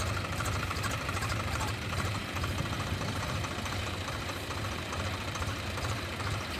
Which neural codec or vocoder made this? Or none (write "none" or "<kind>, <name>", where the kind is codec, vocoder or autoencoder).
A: vocoder, BigVGAN v2